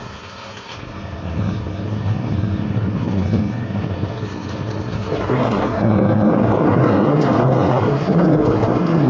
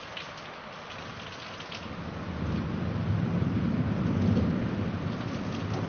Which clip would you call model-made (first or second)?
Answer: first